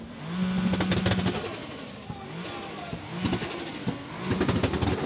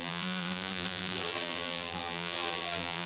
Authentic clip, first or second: first